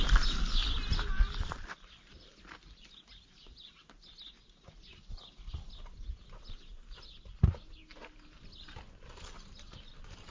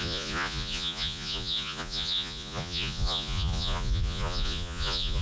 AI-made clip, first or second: second